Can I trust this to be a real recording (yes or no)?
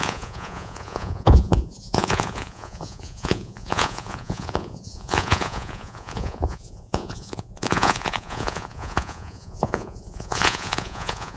no